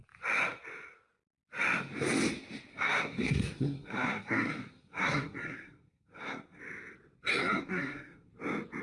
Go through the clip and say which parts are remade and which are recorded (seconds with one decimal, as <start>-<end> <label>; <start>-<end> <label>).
0.0-2.7 recorded; 2.7-6.6 remade; 6.6-7.3 recorded; 7.3-8.3 remade; 8.3-8.8 recorded